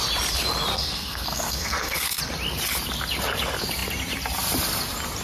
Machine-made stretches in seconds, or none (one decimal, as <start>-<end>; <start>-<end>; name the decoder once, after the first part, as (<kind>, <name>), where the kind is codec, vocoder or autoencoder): 0.7-2.2 (codec, SNAC)